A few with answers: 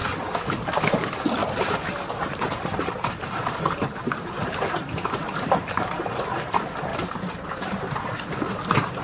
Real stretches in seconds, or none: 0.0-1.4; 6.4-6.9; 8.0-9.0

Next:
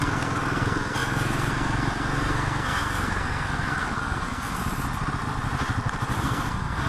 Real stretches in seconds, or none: 4.6-6.2

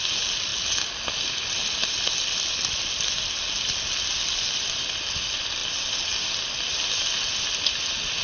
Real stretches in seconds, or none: 0.0-8.2

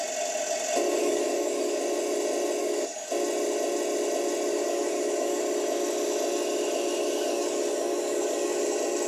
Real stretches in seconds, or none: 0.0-1.0; 1.8-2.6; 3.1-4.5; 5.4-7.0; 8.6-9.1

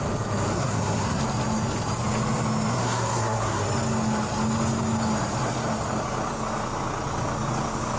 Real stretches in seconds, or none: 0.0-0.5; 1.2-2.7; 3.6-8.0

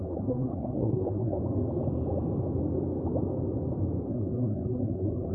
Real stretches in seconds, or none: 1.4-4.1

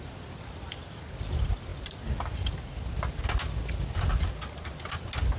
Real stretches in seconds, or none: 0.0-5.4

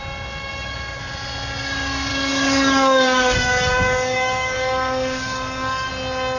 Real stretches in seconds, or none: 0.0-0.4; 1.0-2.1; 5.9-6.4